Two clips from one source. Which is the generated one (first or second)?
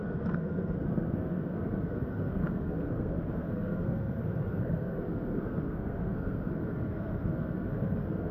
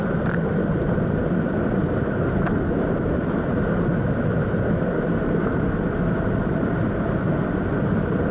first